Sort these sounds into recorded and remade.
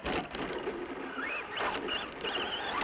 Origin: recorded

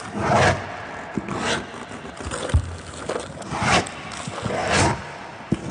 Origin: recorded